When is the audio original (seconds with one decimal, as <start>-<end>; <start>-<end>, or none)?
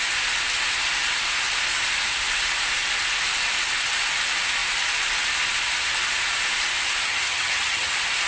0.0-7.0; 7.9-8.3